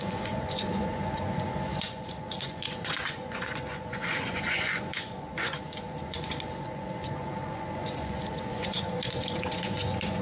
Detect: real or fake fake